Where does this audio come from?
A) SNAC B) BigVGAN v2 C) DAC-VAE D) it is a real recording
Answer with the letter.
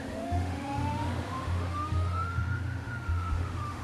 C